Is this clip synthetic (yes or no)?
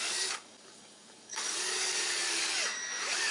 yes